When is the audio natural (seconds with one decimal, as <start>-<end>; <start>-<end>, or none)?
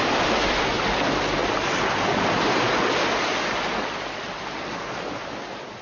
0.0-5.8